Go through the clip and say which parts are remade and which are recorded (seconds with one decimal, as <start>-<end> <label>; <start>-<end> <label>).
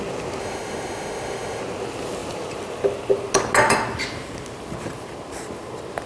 0.0-0.4 recorded; 0.4-1.6 remade; 1.6-6.1 recorded